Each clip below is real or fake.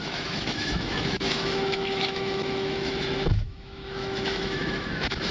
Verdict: fake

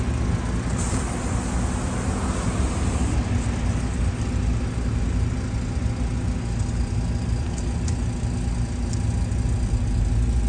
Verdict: real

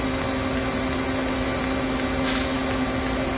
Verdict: real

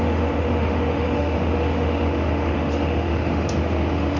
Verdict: fake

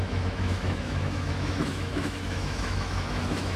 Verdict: fake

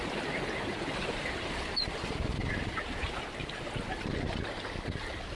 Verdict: real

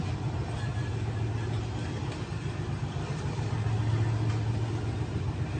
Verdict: real